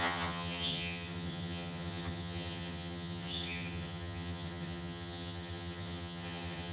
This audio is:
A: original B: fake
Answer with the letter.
B